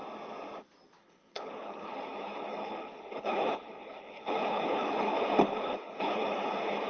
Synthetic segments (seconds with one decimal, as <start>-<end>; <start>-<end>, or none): 1.0-6.9